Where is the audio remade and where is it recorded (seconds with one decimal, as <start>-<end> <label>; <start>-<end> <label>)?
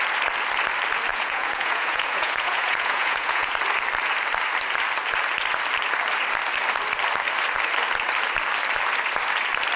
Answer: 0.0-1.1 recorded; 1.1-3.5 remade; 3.5-9.8 recorded